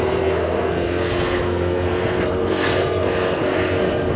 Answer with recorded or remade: remade